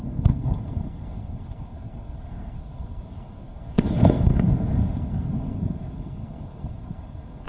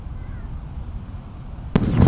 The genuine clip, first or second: second